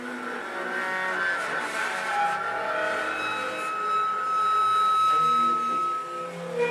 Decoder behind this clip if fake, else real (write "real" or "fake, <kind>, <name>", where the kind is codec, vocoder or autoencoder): real